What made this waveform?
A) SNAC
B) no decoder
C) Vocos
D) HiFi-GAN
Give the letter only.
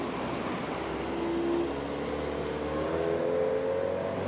B